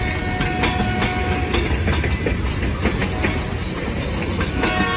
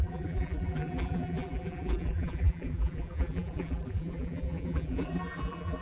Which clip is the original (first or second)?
first